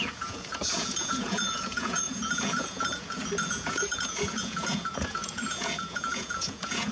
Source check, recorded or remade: remade